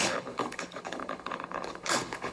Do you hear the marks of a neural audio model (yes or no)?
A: yes